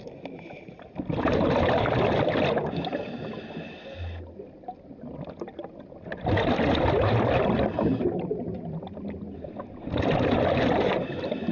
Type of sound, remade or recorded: recorded